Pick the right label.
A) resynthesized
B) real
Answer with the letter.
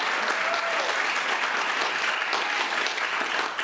B